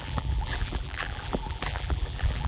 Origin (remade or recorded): remade